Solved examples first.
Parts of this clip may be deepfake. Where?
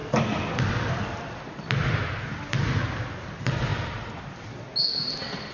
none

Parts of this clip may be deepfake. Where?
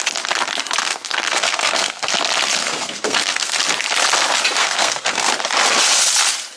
0.8-2.1; 2.6-3.6; 4.6-5.3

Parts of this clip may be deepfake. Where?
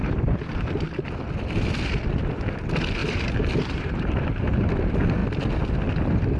3.0-4.3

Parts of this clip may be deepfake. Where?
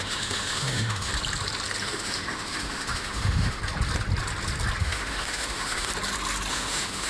0.0-1.1; 1.8-3.6; 4.8-5.9; 6.5-7.1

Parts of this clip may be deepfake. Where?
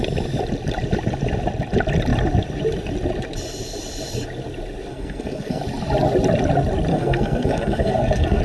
4.9-5.6; 6.9-8.4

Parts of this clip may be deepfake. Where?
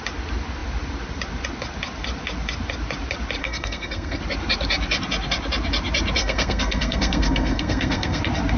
3.4-4.2; 6.2-8.2